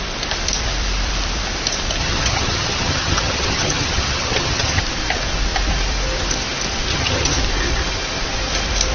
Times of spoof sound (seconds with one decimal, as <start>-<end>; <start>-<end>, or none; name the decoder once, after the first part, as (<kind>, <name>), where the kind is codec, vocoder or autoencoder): 2.0-4.8 (vocoder, HiFi-GAN); 6.9-7.4